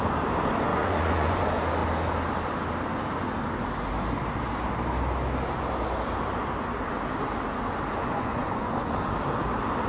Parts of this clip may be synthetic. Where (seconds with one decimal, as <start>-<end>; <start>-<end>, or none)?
0.7-1.4; 8.0-9.0